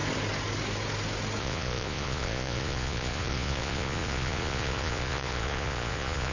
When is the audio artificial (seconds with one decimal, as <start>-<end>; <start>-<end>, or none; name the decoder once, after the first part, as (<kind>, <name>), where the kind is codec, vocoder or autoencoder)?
1.4-6.3 (vocoder, Vocos)